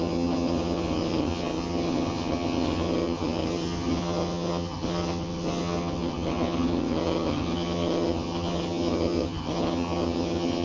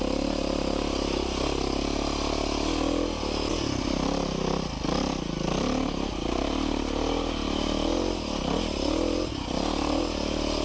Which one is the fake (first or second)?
first